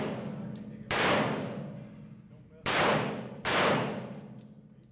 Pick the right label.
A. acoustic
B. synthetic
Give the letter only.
A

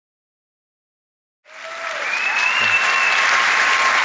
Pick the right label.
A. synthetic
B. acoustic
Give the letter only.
B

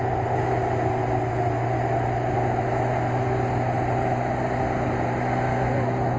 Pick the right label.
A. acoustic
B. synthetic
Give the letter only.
A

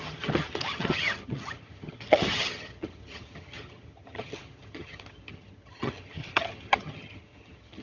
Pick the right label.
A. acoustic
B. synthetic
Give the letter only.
B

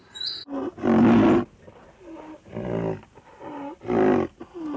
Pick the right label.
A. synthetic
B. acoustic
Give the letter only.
B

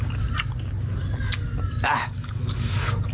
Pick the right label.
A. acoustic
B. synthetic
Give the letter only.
A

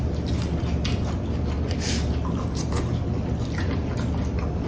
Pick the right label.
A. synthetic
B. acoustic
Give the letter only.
B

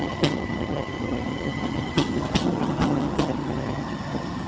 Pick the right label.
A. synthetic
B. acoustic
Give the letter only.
A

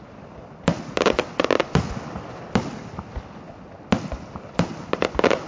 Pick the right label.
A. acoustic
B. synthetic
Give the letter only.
A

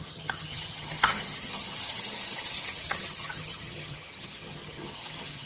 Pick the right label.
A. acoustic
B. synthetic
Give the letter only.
B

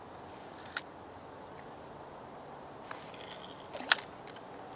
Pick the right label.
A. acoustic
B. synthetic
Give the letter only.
A